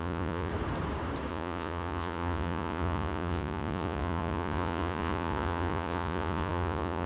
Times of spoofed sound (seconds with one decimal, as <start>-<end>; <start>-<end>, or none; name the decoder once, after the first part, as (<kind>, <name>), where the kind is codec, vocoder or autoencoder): 0.0-0.5 (vocoder, Vocos); 1.3-7.1